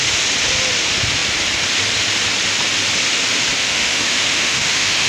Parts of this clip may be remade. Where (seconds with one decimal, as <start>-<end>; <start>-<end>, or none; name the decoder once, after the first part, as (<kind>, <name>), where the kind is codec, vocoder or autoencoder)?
3.6-5.1 (autoencoder, DAC-VAE)